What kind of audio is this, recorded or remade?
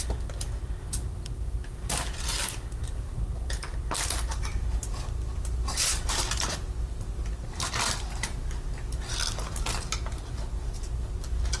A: recorded